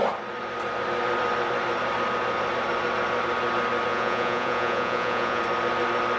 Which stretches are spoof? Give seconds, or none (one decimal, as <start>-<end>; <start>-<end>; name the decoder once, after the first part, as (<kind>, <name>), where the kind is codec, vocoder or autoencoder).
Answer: 3.9-5.4 (vocoder, Vocos)